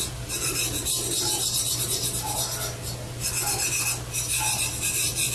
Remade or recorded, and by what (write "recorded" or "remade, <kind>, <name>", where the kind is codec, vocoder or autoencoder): recorded